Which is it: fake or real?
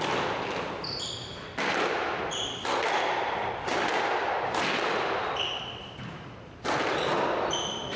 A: real